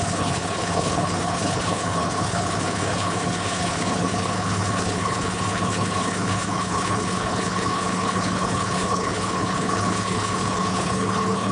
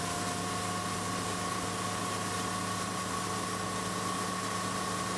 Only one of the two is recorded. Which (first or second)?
second